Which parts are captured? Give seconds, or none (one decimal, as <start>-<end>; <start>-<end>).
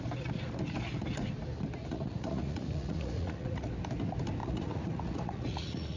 0.0-1.9; 3.7-4.4